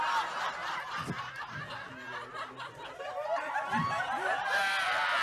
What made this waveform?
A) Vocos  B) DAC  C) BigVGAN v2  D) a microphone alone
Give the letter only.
D